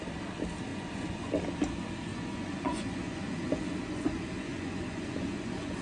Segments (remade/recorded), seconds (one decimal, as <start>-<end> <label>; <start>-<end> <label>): 0.0-0.7 recorded; 0.7-1.3 remade; 1.3-2.1 recorded; 2.1-5.8 remade